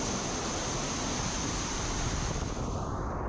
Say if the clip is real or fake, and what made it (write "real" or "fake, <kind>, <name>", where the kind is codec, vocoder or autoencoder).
real